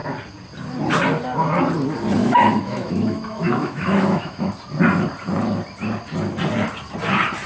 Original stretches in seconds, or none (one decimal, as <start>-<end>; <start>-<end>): 0.0-2.2; 4.5-7.5

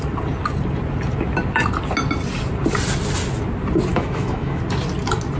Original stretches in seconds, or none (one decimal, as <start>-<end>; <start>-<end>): 0.0-3.9; 4.6-5.4